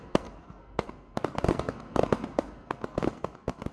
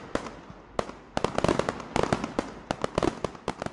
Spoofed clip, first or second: first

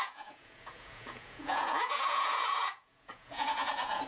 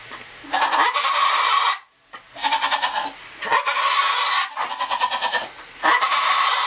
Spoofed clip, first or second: first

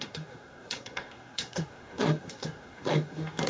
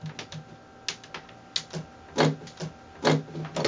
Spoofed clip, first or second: first